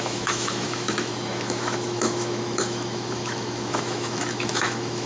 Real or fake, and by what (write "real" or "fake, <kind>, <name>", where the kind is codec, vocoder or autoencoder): fake, autoencoder, DAC-VAE